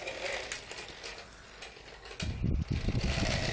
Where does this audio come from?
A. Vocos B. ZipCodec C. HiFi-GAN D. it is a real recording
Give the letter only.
D